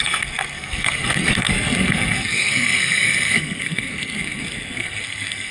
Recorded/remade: remade